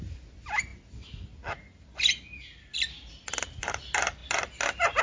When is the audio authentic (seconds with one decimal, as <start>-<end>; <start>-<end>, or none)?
0.0-5.0